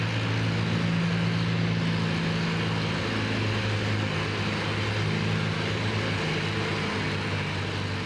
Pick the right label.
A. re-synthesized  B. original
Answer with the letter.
B